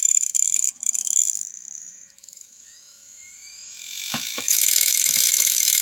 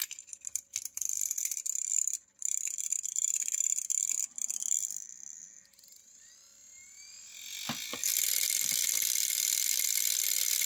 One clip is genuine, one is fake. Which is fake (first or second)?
first